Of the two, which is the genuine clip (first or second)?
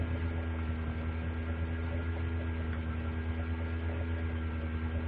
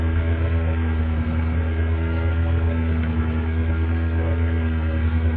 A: first